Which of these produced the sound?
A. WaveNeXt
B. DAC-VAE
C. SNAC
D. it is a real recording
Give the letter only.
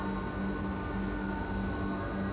D